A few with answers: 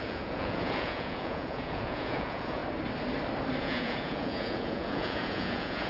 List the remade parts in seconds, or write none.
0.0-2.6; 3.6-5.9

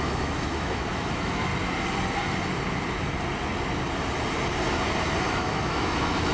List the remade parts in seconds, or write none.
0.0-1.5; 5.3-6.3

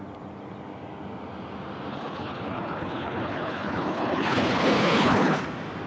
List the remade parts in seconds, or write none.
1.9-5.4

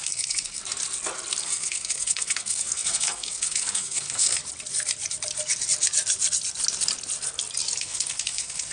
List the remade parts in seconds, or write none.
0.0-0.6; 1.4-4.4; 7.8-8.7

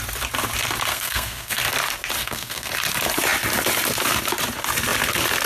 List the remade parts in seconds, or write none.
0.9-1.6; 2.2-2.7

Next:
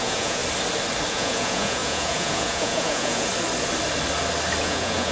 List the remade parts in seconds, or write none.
0.0-0.4; 1.1-3.3; 4.6-5.1